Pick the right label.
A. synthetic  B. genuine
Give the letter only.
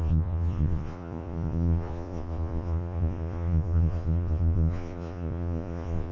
A